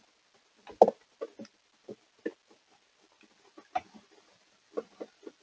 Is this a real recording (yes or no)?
yes